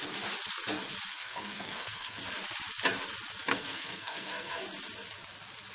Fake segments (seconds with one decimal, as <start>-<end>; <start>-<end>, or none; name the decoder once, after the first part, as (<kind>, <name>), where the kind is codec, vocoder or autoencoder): 1.1-2.2 (codec, SNAC); 3.5-4.6